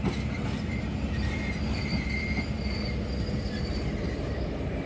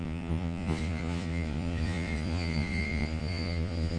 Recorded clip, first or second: first